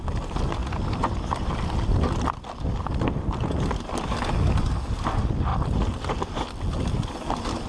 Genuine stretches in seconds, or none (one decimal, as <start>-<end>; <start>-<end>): 0.0-7.7